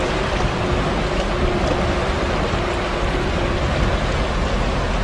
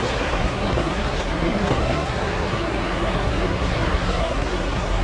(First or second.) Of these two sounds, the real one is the first